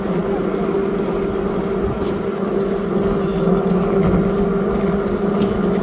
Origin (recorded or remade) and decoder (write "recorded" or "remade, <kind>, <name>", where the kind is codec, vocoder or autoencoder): recorded